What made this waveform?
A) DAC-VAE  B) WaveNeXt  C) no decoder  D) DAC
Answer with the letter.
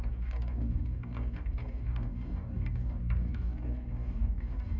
D